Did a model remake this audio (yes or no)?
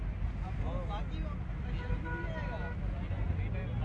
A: no